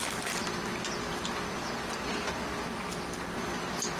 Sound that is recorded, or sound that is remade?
recorded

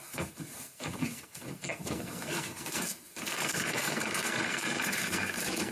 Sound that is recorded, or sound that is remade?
remade